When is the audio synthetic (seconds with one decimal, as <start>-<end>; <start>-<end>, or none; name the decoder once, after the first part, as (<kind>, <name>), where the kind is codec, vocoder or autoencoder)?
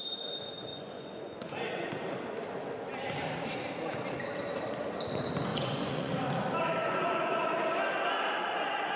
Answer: 0.7-1.9 (vocoder, Vocos); 5.5-6.1; 6.8-7.5